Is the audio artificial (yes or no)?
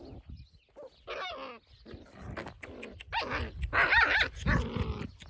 no